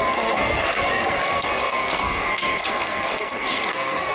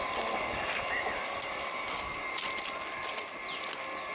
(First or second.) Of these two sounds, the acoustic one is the second